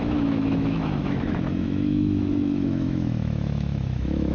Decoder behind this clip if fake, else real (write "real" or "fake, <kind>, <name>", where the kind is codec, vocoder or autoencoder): fake, autoencoder, DAC-VAE